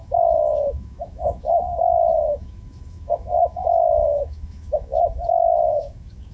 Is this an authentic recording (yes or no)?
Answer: no